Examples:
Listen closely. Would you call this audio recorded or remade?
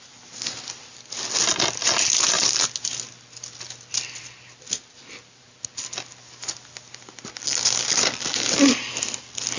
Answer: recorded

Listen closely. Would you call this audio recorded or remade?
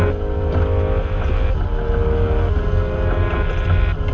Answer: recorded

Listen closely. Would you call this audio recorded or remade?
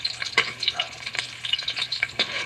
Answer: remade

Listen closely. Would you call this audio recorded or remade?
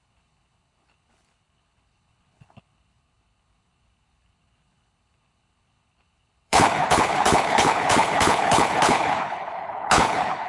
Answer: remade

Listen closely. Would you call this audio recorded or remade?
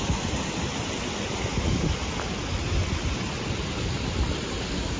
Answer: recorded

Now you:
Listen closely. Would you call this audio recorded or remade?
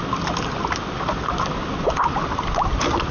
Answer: recorded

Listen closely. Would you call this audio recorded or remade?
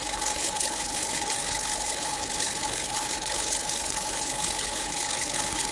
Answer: remade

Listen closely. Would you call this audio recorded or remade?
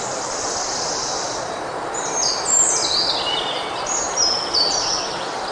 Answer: recorded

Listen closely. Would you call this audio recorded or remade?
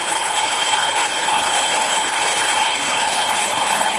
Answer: remade